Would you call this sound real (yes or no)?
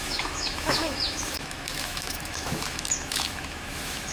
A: no